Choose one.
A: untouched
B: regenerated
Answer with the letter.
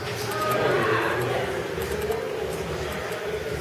A